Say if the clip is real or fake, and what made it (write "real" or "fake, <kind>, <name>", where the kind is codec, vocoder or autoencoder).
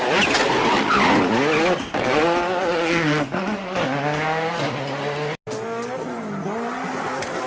real